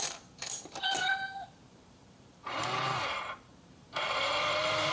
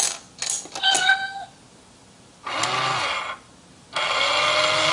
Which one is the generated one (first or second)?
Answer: first